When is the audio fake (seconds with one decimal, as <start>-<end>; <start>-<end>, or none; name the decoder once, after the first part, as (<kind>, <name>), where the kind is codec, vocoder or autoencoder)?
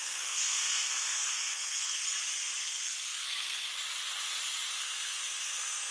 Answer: 0.0-2.0 (codec, SNAC); 2.6-3.7; 4.7-5.9